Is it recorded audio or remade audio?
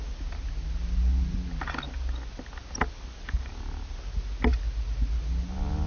recorded